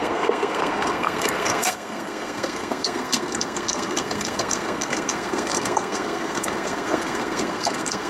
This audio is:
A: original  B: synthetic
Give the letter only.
B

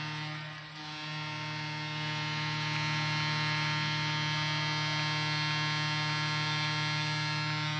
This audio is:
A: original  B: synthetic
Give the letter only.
A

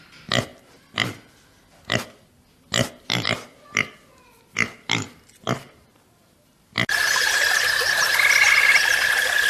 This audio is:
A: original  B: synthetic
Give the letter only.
A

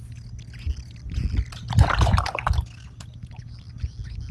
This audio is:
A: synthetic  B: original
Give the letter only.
B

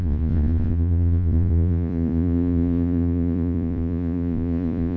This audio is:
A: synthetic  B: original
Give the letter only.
A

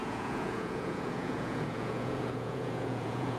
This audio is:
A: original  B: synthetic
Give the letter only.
B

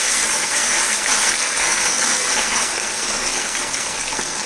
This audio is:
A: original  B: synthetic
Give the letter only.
B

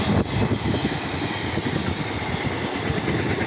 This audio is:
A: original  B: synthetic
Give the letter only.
A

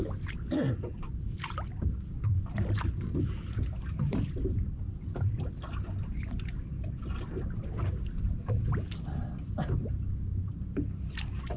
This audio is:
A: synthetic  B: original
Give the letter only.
B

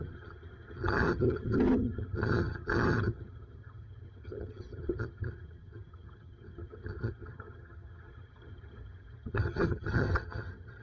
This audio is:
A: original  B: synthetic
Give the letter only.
B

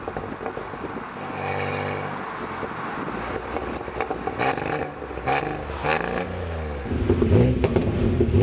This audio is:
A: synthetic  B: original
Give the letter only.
B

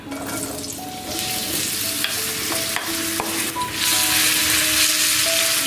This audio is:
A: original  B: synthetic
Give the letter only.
A